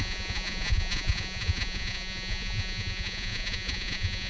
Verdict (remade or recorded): remade